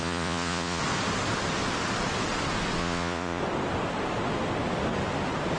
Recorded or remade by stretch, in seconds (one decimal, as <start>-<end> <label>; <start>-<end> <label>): 0.0-0.8 remade; 0.8-2.8 recorded; 2.8-3.4 remade; 3.4-5.6 recorded